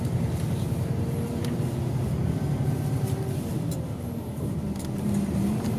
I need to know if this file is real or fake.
real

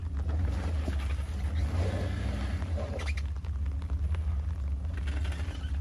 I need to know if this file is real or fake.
real